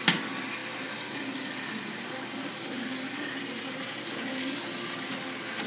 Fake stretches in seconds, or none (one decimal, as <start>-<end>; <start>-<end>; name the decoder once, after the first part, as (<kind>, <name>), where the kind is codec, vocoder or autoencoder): none